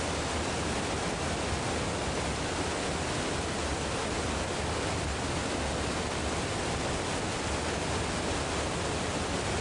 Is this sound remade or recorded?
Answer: recorded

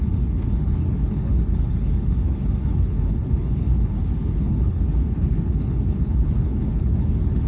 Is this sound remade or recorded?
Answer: remade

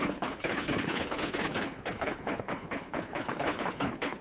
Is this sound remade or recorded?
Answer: remade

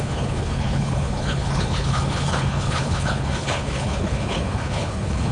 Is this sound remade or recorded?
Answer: remade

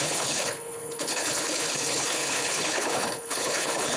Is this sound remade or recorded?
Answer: remade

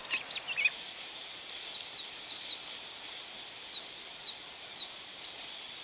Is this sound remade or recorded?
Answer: recorded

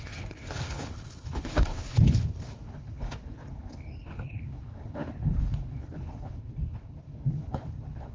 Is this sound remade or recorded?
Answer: remade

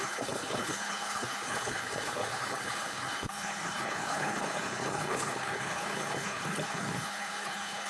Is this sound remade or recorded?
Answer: remade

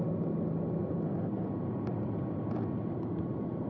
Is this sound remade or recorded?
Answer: recorded